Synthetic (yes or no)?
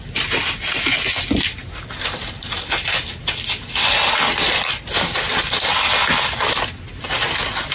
no